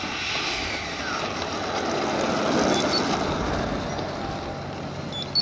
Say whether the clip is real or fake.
real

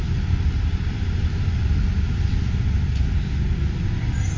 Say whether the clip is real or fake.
real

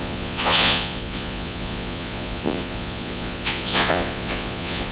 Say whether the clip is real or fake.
fake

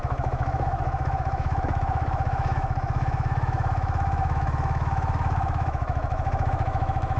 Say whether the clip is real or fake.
fake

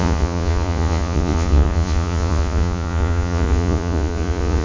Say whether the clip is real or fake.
fake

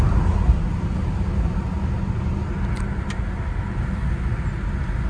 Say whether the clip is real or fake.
real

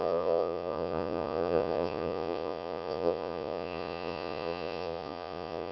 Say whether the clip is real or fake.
fake